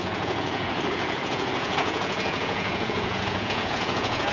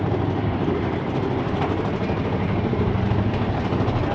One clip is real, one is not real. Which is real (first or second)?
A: second